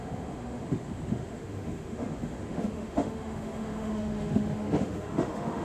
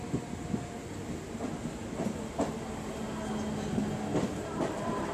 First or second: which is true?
second